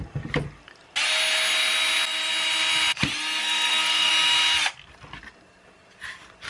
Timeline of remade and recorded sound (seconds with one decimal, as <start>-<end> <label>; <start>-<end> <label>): 0.0-3.4 recorded; 3.4-4.1 remade; 4.1-6.5 recorded